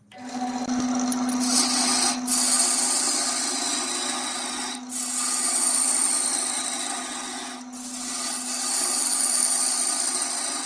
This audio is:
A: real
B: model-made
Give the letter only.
A